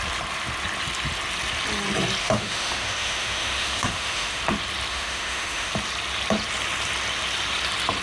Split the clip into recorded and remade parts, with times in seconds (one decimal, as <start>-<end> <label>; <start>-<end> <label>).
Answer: 0.0-2.2 recorded; 2.2-4.4 remade; 4.4-4.9 recorded; 4.9-5.7 remade; 5.7-8.0 recorded